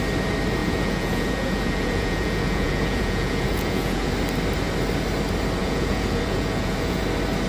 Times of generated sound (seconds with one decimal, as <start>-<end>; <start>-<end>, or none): 0.6-4.1; 5.6-7.0